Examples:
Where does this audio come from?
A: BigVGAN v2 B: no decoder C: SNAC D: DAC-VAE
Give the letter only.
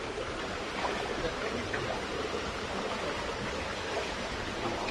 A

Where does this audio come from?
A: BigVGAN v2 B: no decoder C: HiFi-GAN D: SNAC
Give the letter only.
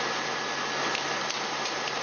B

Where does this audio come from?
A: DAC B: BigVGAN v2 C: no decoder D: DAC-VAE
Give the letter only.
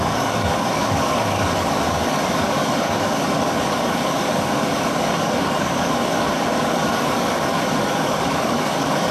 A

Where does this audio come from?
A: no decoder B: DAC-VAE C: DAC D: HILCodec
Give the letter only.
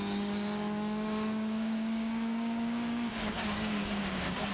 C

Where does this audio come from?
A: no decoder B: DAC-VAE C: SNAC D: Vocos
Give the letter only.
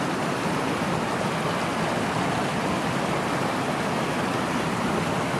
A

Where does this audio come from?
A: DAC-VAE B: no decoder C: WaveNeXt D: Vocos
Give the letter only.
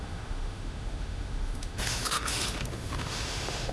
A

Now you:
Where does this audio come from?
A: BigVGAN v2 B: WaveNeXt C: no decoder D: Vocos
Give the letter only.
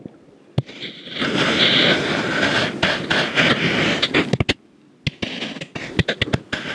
C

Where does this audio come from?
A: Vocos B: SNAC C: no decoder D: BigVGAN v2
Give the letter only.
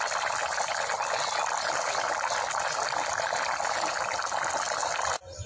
C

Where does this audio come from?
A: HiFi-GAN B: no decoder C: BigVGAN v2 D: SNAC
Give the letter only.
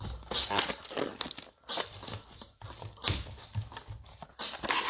B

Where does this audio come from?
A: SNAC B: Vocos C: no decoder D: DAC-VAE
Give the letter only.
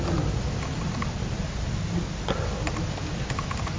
C